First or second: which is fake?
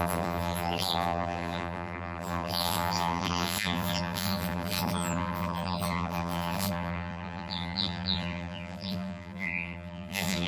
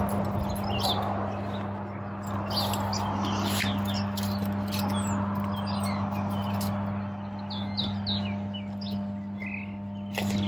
first